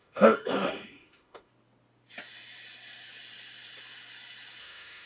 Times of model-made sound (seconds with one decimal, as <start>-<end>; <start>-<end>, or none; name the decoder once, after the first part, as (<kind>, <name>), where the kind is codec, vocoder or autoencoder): 0.0-1.5 (autoencoder, DAC-VAE); 4.6-5.1